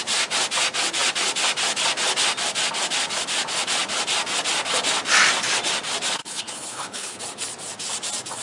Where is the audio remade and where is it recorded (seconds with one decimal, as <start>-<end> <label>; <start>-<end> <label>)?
0.0-6.2 recorded; 6.2-7.2 remade; 7.2-8.4 recorded